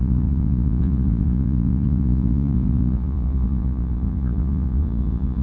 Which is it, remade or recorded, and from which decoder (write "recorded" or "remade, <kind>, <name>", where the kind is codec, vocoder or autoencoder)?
remade, vocoder, Vocos